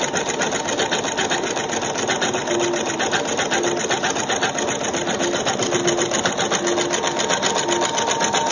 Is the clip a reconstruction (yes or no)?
no